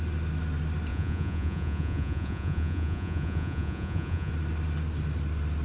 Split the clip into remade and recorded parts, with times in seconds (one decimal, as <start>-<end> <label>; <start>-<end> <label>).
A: 0.0-0.9 recorded; 0.9-4.3 remade; 4.3-5.6 recorded